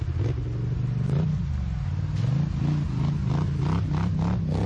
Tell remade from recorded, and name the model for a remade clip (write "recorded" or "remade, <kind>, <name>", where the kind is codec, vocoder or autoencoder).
recorded